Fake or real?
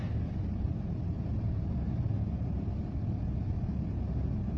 real